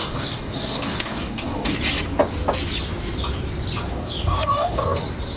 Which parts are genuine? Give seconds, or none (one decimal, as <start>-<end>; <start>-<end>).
1.8-3.9; 5.0-5.4